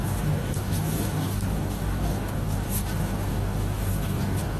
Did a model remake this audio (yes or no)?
yes